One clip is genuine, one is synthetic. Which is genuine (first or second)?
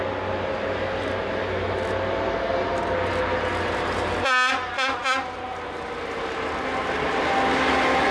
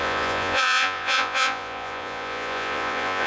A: first